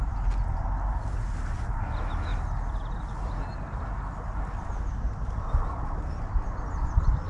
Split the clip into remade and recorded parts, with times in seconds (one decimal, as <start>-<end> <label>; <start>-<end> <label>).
0.0-7.3 recorded